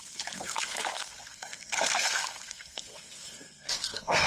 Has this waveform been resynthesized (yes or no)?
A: yes